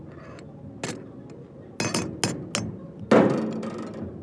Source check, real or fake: real